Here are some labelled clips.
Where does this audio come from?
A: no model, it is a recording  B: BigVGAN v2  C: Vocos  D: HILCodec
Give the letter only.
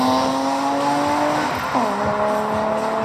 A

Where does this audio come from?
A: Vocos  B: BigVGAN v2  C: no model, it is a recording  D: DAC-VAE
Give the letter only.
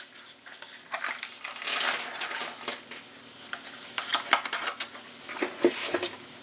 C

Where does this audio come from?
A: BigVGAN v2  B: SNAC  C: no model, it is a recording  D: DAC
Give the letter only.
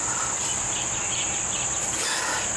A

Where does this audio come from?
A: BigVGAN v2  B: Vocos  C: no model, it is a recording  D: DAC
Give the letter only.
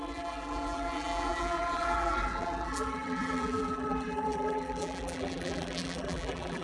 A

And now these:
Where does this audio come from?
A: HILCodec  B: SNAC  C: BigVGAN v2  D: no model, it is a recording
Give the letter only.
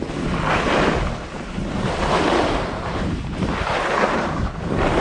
C